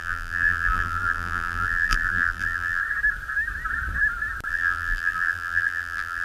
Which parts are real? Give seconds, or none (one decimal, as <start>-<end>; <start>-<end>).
2.8-4.5